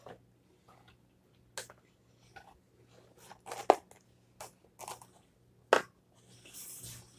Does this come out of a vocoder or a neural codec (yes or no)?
no